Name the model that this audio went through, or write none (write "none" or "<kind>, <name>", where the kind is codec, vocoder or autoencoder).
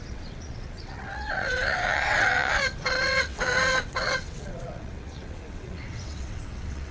vocoder, WaveNeXt